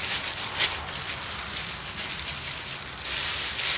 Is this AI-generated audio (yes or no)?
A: no